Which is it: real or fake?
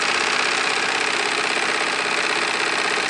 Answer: real